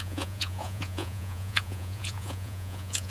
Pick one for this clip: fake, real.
fake